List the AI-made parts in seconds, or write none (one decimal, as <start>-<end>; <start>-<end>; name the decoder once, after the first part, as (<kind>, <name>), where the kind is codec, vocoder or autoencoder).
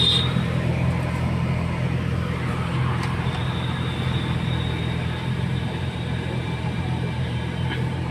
0.0-0.7 (vocoder, BigVGAN v2); 5.4-8.1